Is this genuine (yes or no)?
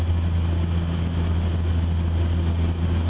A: yes